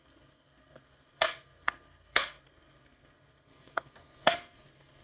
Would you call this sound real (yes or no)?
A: no